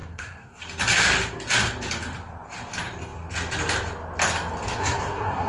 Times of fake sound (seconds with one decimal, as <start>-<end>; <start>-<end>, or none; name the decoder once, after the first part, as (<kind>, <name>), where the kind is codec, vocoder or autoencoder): 0.0-0.6 (codec, SNAC); 4.8-5.5